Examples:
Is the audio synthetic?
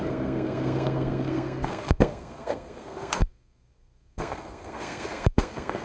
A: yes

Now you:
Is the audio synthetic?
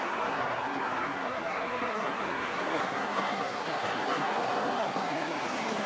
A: yes